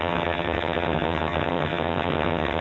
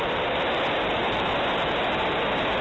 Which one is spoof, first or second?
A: first